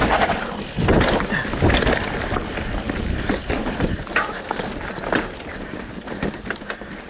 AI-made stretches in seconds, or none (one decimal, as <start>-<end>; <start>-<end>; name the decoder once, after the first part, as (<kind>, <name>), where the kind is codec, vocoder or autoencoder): none